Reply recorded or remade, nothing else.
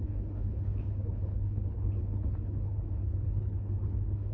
remade